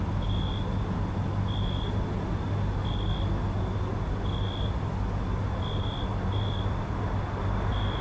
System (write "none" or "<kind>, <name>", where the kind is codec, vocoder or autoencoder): none